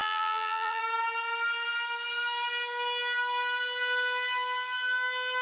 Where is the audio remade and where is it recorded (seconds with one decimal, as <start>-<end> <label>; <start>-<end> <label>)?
0.0-0.8 remade; 0.8-5.4 recorded